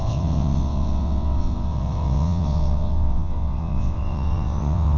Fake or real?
fake